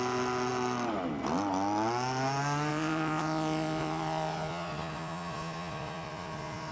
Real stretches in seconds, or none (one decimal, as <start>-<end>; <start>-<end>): 0.0-2.7